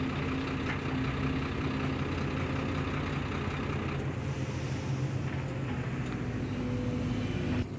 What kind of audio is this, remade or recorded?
recorded